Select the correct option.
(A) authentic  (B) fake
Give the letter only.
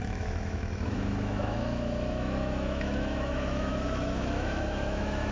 B